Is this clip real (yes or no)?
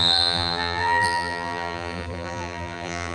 no